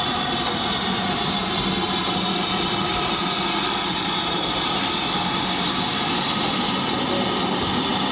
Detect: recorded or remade recorded